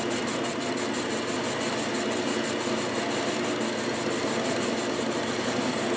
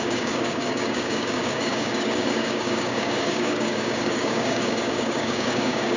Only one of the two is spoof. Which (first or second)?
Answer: second